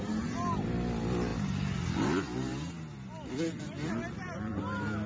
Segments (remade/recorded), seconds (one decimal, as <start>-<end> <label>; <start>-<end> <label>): 0.0-5.1 recorded